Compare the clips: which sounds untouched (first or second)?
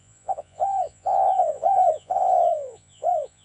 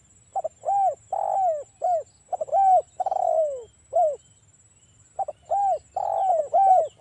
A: second